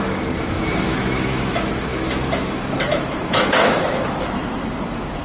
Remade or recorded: remade